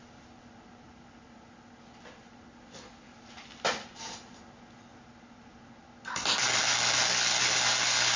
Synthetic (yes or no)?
no